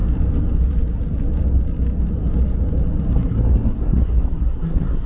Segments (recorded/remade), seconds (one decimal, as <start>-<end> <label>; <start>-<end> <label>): 0.0-3.1 recorded; 3.1-5.1 remade